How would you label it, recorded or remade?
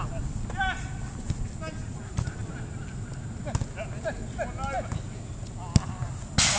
recorded